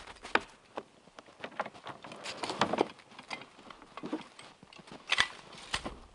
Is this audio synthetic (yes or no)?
no